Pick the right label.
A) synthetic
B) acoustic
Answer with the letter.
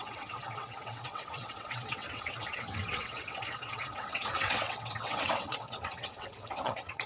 A